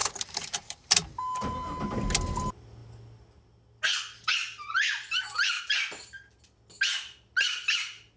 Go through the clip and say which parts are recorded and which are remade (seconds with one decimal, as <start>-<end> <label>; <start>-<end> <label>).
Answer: 0.0-1.1 remade; 1.1-8.2 recorded